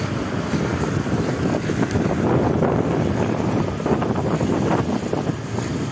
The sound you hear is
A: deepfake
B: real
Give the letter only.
B